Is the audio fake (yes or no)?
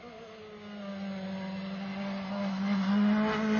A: no